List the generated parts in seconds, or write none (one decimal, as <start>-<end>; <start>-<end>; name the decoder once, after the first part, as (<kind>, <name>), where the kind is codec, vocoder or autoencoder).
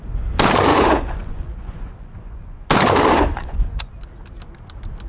0.7-2.7 (vocoder, Vocos); 3.3-3.9